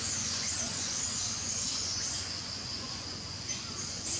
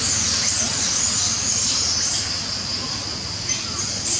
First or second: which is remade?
first